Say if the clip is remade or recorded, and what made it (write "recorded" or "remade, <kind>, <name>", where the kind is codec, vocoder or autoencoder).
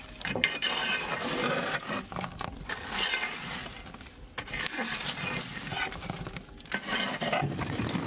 recorded